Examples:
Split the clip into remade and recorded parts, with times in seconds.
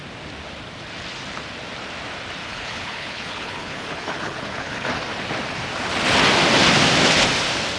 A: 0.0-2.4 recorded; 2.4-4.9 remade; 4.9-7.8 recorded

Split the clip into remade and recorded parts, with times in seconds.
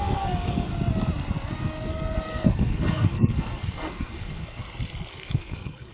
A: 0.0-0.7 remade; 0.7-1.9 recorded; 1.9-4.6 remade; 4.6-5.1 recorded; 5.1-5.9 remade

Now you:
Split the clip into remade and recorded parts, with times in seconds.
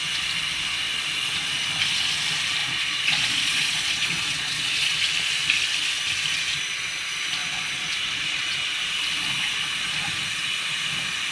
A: 0.0-2.6 recorded; 2.6-5.0 remade; 5.0-7.4 recorded; 7.4-8.7 remade; 8.7-11.3 recorded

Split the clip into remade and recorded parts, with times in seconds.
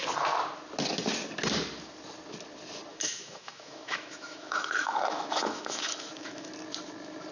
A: 0.0-2.9 recorded; 2.9-6.5 remade; 6.5-7.3 recorded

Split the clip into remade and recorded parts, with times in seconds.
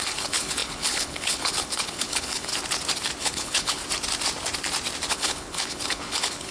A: 0.0-2.5 remade; 2.5-3.2 recorded; 3.2-3.8 remade; 3.8-5.1 recorded; 5.1-6.5 remade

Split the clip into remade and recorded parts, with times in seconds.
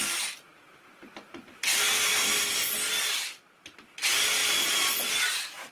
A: 0.0-5.7 recorded